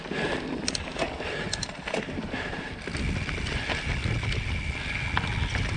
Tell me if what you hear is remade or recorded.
recorded